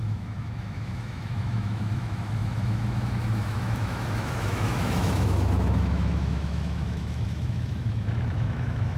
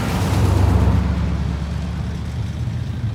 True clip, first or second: second